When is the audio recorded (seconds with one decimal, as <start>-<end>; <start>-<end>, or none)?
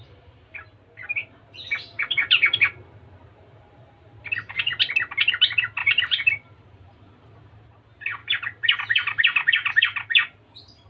0.0-1.2; 4.8-5.8; 7.1-8.2; 10.4-10.9